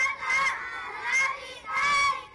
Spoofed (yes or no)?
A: no